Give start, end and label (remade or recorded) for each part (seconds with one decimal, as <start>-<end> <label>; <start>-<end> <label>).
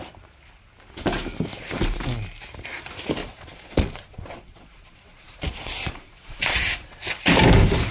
0.0-3.2 recorded; 3.2-7.0 remade; 7.0-7.9 recorded